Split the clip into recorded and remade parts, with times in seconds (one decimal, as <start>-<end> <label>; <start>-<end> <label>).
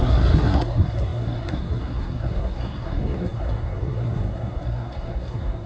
0.0-5.7 remade